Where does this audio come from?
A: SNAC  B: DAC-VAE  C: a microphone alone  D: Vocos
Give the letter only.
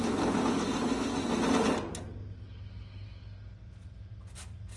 C